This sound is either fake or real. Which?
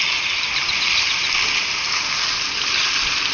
real